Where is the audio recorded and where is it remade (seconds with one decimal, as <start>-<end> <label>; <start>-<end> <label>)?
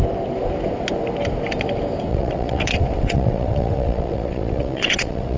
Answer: 0.0-2.1 recorded; 2.1-5.4 remade